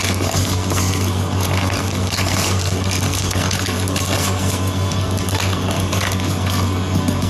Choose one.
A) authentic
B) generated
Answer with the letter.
B